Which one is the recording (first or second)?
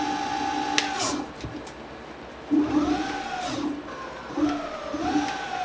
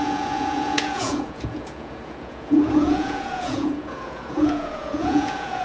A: first